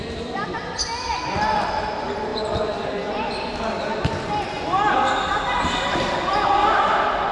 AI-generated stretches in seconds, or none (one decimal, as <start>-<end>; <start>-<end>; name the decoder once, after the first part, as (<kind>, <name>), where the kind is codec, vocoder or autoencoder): none